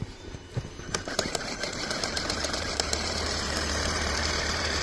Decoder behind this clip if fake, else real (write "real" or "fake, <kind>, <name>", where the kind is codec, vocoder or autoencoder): fake, vocoder, BigVGAN v2